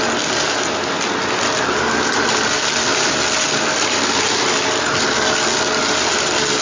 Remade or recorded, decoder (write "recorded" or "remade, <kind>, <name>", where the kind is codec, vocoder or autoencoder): recorded